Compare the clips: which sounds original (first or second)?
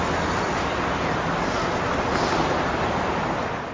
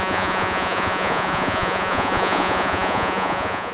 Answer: first